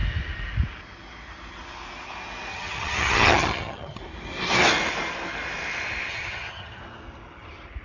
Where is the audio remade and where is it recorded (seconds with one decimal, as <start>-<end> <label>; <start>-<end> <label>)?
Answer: 0.0-2.5 recorded; 2.5-4.0 remade; 4.0-6.1 recorded; 6.1-6.8 remade; 6.8-7.8 recorded